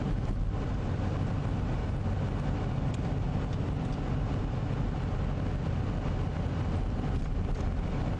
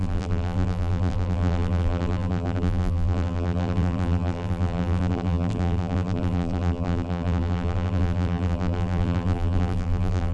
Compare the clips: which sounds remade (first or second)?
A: second